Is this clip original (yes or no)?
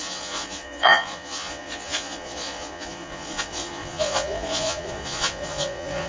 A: no